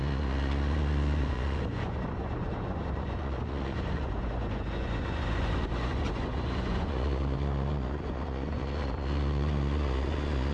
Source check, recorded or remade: remade